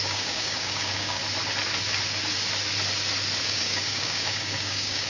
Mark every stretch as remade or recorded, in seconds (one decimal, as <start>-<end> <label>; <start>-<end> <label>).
0.0-1.2 remade; 1.2-3.4 recorded; 3.4-5.1 remade